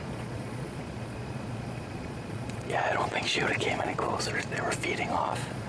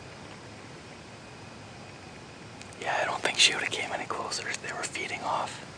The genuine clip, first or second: second